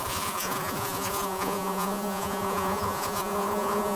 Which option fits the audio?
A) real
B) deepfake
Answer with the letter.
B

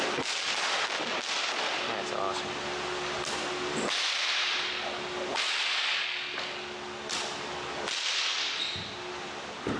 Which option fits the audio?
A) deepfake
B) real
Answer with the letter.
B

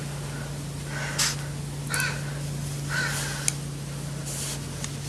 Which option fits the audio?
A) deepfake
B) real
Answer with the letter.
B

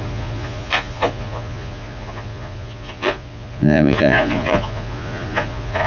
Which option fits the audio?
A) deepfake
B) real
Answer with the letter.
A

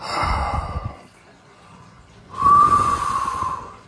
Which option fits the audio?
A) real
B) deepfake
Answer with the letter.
B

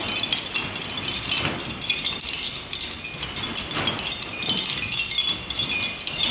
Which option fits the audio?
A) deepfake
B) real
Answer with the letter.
B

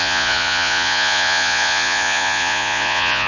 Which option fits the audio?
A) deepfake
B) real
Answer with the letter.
A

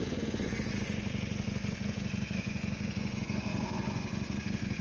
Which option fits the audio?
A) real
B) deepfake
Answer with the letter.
B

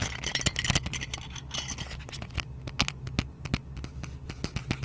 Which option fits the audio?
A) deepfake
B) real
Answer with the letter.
B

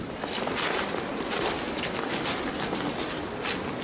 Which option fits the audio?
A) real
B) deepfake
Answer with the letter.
A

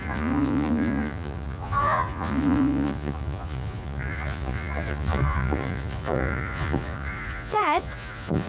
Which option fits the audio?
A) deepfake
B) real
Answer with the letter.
A